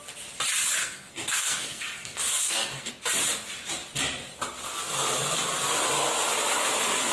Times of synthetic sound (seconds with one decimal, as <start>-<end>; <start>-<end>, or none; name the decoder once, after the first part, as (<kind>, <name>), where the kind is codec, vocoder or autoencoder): 0.8-2.9 (codec, SNAC)